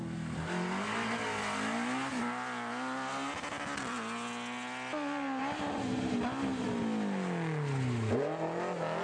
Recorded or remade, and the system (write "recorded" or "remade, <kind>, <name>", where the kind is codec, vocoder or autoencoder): recorded